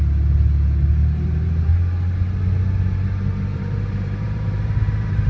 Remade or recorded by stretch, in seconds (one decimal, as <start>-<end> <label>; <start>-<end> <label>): 0.0-1.0 recorded; 1.0-1.7 remade; 1.7-3.5 recorded; 3.5-5.3 remade